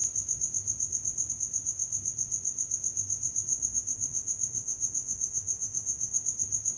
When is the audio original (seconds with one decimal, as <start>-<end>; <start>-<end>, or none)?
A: 0.0-3.5; 6.2-6.8